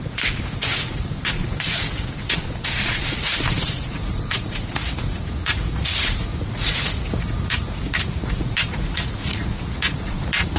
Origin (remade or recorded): remade